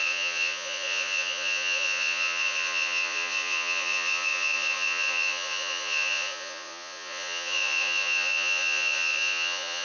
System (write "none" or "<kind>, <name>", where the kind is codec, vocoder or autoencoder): vocoder, Vocos